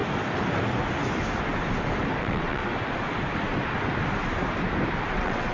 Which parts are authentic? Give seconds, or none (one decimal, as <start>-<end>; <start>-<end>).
0.0-2.2; 2.6-5.1